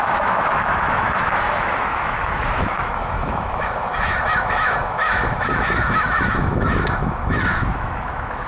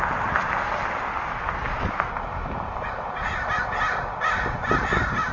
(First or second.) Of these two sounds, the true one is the second